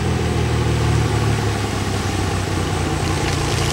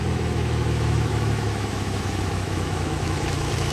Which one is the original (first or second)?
first